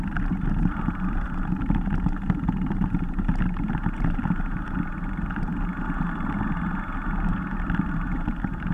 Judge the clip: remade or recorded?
remade